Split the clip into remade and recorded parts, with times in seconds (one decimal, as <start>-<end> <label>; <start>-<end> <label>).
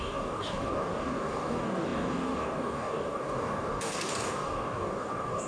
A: 0.0-5.5 remade